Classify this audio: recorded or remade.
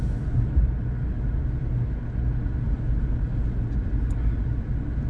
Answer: recorded